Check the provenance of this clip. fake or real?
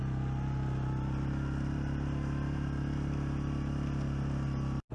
real